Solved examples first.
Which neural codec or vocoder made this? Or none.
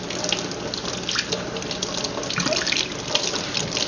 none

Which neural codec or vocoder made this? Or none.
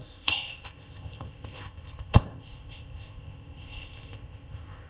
codec, ZipCodec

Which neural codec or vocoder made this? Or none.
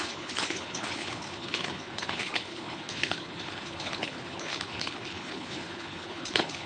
codec, HILCodec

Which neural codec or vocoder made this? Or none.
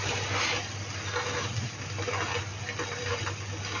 none